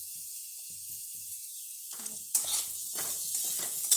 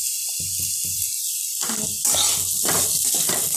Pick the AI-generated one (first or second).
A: first